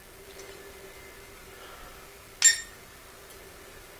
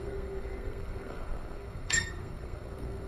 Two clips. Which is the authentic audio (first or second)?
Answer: first